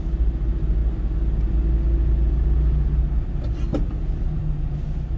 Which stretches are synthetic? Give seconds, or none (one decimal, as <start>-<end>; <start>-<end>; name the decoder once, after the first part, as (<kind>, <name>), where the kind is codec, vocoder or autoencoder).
none